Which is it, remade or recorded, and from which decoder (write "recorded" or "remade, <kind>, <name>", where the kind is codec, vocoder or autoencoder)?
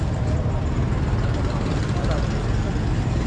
recorded